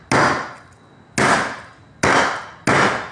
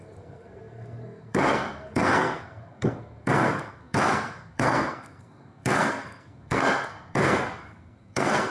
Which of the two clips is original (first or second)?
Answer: first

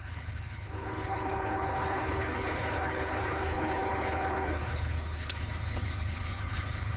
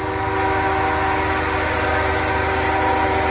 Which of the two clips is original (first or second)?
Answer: second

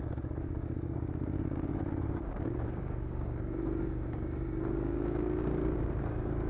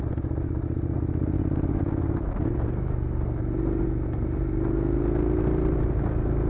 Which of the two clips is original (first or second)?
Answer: second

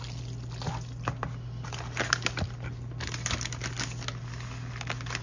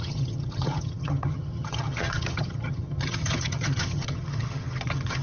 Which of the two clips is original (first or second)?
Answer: first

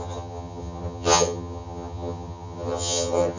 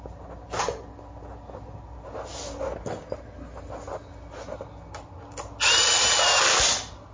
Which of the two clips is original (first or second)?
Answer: second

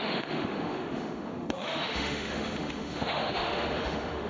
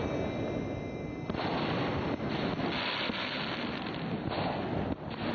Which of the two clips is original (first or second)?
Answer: second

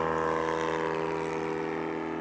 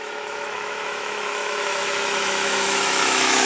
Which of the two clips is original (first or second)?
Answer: first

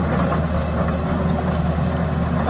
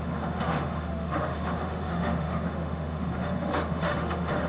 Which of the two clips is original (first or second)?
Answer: first